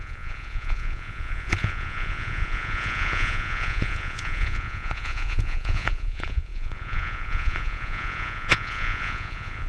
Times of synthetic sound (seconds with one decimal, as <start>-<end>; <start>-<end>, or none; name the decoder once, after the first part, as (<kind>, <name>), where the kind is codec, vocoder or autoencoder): 0.0-9.7 (vocoder, Vocos)